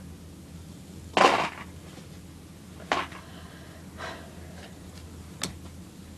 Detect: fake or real real